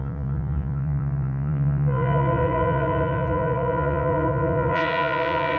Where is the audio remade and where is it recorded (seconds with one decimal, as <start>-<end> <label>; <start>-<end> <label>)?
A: 0.0-5.6 remade